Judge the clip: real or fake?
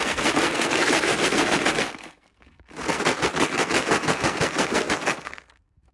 fake